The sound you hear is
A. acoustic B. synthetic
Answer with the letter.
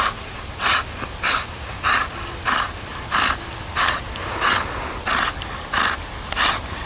A